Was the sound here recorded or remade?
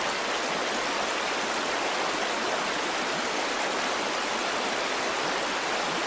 recorded